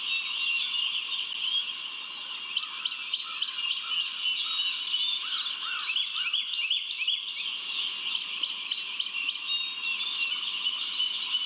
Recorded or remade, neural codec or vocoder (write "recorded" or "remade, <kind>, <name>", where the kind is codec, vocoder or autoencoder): recorded